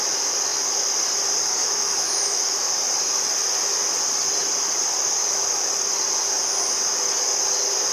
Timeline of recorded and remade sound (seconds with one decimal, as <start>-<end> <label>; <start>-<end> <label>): 0.0-1.6 recorded; 1.6-2.7 remade; 2.7-5.2 recorded; 5.2-5.7 remade; 5.7-7.9 recorded